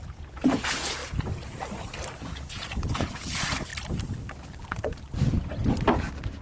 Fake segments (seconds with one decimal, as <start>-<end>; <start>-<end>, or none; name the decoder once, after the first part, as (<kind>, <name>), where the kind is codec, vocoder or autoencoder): 0.0-1.0 (vocoder, Vocos); 2.2-3.7